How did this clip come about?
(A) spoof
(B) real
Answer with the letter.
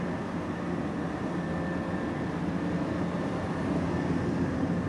B